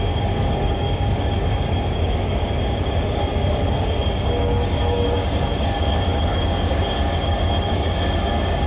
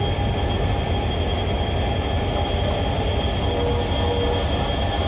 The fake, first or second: first